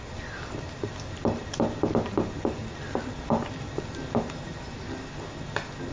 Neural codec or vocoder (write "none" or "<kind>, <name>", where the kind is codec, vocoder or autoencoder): none